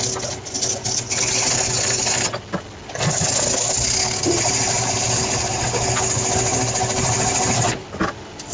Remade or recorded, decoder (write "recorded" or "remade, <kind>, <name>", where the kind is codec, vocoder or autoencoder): recorded